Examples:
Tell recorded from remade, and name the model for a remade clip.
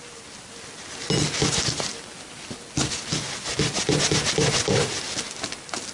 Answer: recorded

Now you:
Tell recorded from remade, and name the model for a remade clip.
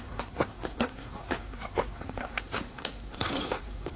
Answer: remade, codec, SNAC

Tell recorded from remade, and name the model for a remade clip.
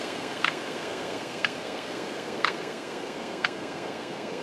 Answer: remade, codec, SNAC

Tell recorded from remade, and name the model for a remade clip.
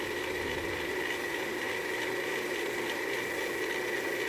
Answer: recorded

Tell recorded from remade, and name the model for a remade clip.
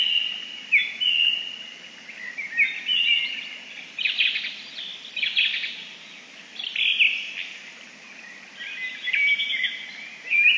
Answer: recorded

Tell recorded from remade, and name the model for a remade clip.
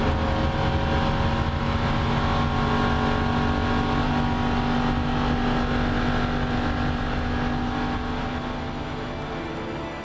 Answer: recorded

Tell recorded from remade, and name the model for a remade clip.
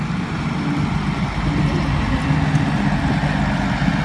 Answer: recorded